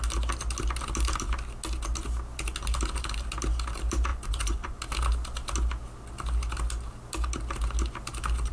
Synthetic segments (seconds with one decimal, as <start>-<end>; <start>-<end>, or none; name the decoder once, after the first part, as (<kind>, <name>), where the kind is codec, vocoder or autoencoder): 4.1-4.8 (vocoder, Vocos)